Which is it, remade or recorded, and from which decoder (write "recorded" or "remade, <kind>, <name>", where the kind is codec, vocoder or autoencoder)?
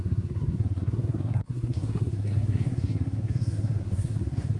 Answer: remade, codec, SNAC